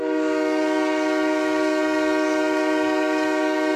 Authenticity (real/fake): fake